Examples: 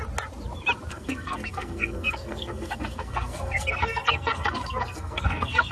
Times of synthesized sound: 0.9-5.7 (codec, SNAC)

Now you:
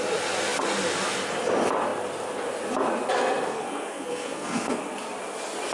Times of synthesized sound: 3.5-4.8 (codec, SNAC)

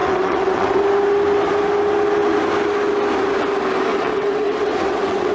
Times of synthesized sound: 0.0-0.8 (vocoder, WaveNeXt); 3.9-5.3

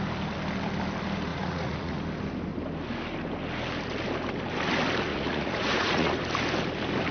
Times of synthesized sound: 1.3-2.0 (vocoder, Vocos); 5.1-6.1

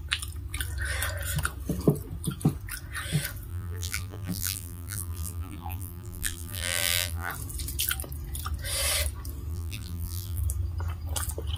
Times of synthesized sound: 3.5-7.3 (vocoder, BigVGAN v2); 9.5-10.4

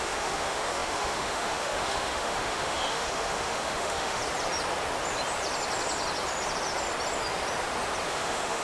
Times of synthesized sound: 0.0-4.2 (autoencoder, DAC-VAE); 8.1-8.6